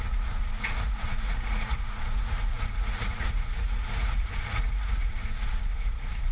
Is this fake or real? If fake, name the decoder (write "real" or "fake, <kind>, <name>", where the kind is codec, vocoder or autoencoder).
fake, vocoder, Vocos